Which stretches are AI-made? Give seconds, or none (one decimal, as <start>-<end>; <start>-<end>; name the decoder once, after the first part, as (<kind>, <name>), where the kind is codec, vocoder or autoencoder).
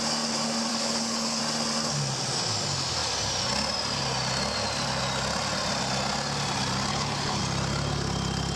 0.7-1.4 (codec, HILCodec); 6.9-7.4